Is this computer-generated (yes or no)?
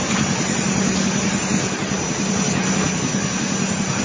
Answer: no